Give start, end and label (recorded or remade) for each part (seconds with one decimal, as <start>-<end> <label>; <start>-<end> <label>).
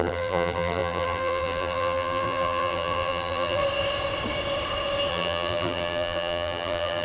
0.0-3.6 remade; 3.6-5.1 recorded; 5.1-7.0 remade